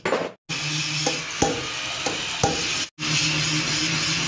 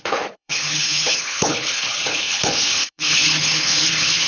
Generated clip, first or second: second